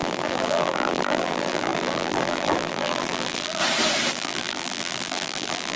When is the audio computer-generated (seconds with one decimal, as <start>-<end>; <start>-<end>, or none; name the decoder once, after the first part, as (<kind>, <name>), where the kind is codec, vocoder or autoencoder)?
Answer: 0.0-3.6 (vocoder, BigVGAN v2); 4.1-5.8